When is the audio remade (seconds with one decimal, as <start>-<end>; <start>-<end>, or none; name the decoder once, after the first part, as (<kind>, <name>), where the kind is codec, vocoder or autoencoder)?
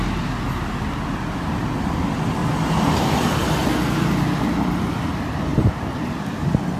2.4-3.0 (vocoder, BigVGAN v2); 5.5-6.1